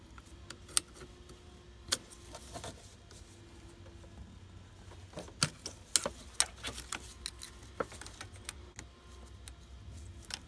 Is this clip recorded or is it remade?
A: recorded